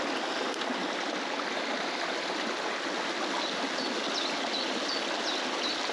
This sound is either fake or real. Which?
real